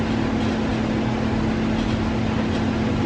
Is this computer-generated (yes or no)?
no